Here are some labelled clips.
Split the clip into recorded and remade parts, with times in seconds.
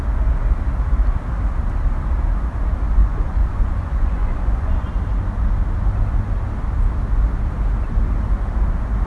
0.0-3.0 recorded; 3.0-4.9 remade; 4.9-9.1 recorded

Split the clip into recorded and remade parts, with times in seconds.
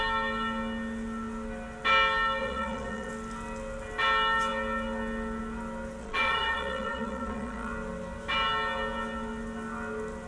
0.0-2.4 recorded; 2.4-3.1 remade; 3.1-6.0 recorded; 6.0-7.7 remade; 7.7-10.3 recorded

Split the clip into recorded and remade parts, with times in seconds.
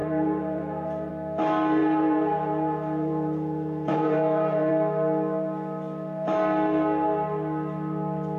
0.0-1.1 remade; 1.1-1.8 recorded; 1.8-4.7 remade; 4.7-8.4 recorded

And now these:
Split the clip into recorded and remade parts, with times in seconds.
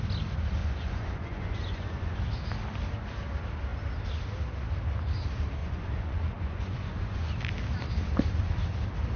0.0-0.6 recorded; 0.6-2.2 remade; 2.2-5.6 recorded; 5.6-7.3 remade; 7.3-9.2 recorded